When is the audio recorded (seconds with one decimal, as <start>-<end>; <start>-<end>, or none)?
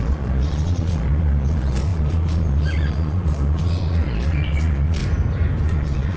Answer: 5.0-5.6